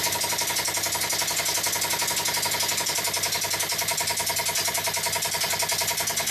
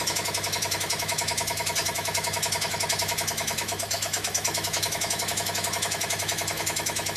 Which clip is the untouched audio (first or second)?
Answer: first